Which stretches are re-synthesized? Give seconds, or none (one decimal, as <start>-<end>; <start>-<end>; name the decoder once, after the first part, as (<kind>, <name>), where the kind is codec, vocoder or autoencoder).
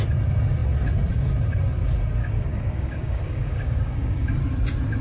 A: 2.2-4.4 (codec, DAC)